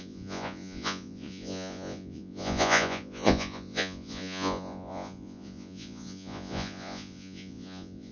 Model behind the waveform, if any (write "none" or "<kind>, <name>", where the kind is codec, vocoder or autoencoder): vocoder, Vocos